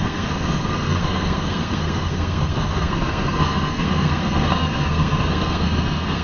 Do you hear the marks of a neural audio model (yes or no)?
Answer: yes